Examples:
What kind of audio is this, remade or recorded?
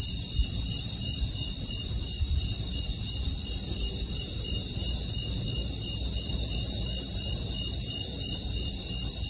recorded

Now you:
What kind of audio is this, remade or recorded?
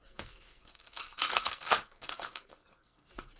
remade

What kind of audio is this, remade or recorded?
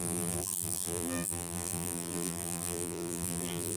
remade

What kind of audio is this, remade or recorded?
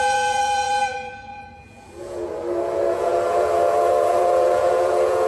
remade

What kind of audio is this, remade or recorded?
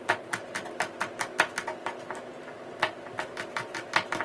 recorded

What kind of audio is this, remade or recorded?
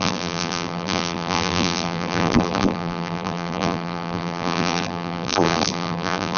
remade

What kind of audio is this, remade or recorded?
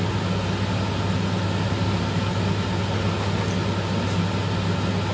recorded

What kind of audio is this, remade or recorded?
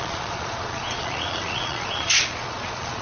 remade